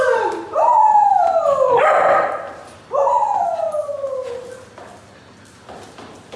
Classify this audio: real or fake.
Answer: real